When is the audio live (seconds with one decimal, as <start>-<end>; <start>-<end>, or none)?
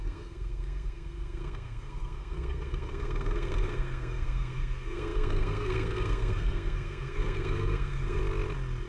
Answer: 8.2-8.9